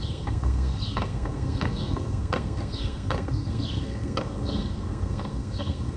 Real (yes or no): no